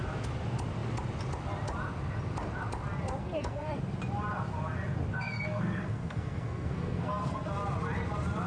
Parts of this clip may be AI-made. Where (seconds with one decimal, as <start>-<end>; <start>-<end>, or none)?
3.2-3.8; 5.1-7.5